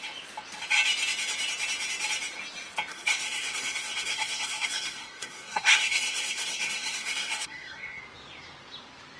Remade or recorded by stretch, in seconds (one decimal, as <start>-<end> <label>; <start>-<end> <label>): 0.0-2.9 recorded; 2.9-8.0 remade; 8.0-9.2 recorded